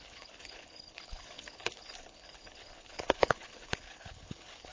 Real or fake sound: fake